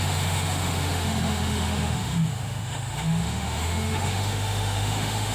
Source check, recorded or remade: remade